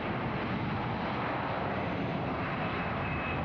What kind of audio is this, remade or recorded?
recorded